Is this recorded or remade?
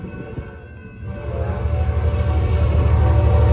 recorded